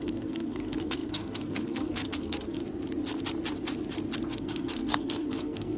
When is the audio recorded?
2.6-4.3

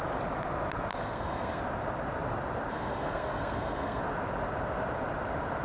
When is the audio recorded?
0.0-0.9; 1.6-2.7; 4.0-5.6

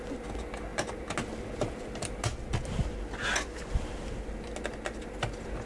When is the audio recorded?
0.0-5.7

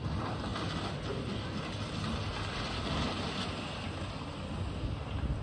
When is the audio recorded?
0.0-5.4

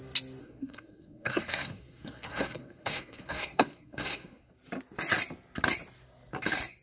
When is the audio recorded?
0.0-0.4; 4.5-6.8

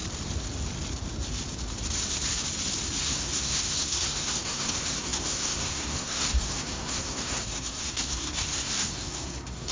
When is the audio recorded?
0.0-3.0

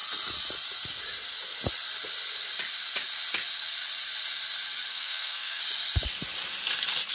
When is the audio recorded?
0.0-4.9; 5.6-7.1

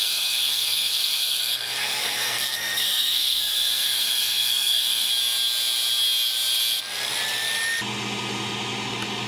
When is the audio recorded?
5.1-9.3